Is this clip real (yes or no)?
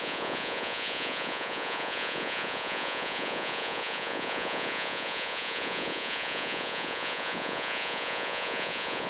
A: no